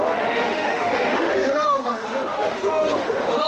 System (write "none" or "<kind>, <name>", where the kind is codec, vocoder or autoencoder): autoencoder, DAC-VAE